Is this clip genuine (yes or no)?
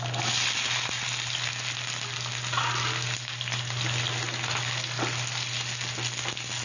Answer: yes